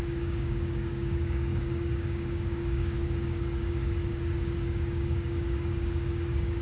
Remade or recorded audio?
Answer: remade